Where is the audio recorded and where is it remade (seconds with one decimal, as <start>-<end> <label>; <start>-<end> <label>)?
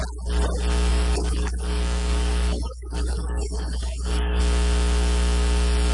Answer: 0.0-0.9 recorded; 0.9-4.4 remade; 4.4-5.9 recorded